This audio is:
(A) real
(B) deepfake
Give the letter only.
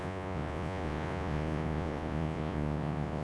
B